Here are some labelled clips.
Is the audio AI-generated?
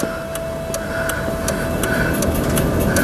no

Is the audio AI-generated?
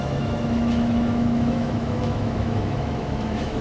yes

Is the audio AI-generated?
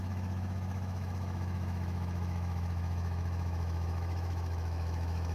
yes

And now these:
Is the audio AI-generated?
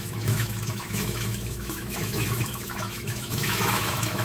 yes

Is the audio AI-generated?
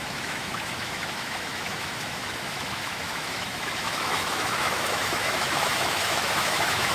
yes